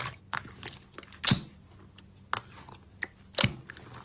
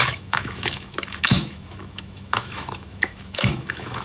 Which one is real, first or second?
first